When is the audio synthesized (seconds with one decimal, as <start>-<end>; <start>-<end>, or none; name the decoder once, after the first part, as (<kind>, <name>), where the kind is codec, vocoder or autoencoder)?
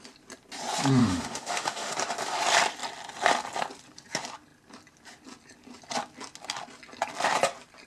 1.0-1.9 (autoencoder, DAC-VAE)